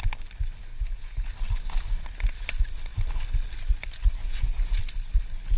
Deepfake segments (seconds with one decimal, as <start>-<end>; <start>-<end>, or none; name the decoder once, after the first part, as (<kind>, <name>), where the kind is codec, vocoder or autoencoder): 0.7-1.3 (vocoder, Vocos); 4.2-4.8